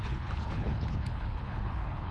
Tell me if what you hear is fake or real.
fake